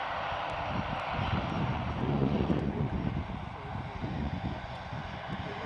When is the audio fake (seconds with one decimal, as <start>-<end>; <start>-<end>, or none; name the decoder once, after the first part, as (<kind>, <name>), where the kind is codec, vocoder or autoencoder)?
1.7-3.0 (vocoder, Vocos); 4.0-5.7